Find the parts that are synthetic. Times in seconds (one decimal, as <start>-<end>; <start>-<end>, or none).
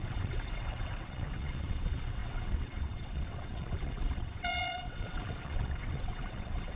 0.0-6.8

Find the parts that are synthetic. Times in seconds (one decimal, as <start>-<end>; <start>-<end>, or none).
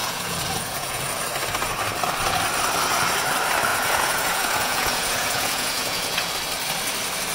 0.0-1.0; 3.7-6.3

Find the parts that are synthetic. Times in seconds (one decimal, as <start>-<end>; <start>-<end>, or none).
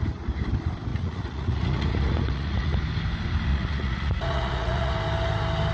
0.9-2.8; 3.5-4.9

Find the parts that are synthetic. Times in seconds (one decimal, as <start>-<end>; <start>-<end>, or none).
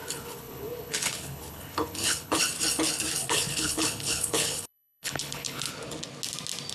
0.0-2.4; 3.2-5.7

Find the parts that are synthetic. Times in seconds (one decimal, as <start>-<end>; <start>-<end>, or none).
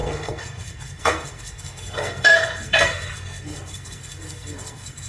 0.0-5.1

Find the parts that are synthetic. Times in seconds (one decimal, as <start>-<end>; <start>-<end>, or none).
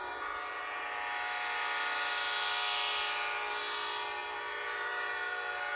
none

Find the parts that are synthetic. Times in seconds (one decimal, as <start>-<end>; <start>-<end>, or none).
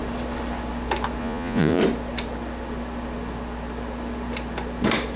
1.2-1.8